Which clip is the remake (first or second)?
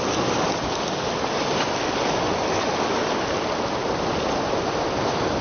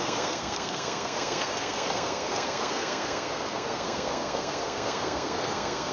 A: second